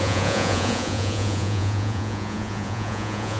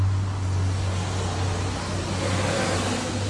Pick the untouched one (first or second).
second